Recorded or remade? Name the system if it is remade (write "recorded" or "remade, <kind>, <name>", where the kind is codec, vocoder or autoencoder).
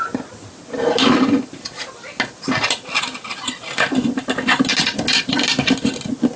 recorded